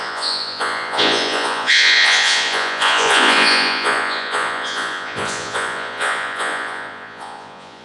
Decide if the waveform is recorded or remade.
remade